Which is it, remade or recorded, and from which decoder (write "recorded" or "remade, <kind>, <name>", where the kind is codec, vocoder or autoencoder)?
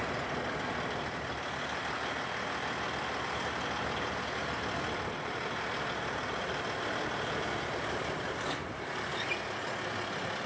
recorded